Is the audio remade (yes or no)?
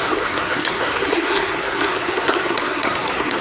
yes